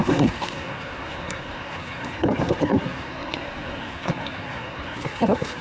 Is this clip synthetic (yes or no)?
yes